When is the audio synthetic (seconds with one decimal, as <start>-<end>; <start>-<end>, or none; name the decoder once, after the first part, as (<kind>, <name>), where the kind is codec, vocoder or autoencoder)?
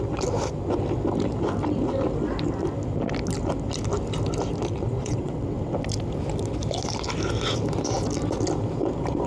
5.0-5.7 (vocoder, WaveNeXt)